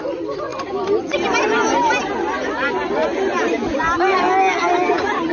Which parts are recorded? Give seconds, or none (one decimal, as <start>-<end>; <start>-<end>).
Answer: 0.0-5.3